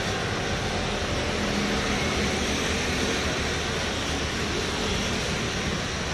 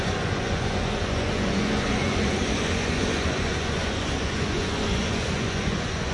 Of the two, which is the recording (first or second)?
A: first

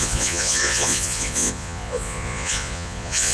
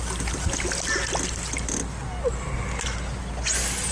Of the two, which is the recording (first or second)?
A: second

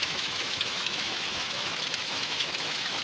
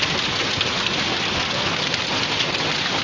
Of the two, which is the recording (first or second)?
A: second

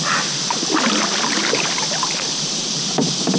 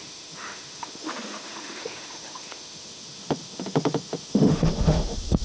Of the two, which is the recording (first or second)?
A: first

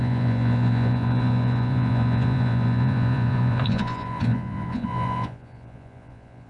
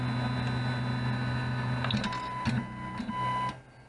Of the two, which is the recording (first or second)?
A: second